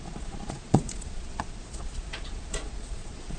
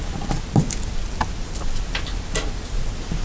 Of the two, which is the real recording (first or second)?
second